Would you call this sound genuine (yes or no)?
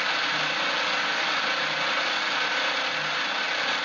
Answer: yes